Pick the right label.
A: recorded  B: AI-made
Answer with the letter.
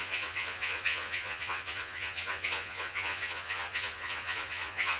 B